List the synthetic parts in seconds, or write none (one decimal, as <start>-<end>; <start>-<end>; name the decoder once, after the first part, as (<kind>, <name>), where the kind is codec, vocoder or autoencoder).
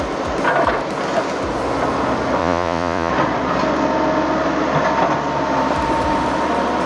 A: 2.4-3.1 (vocoder, Vocos)